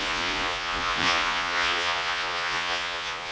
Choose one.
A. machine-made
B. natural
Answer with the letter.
A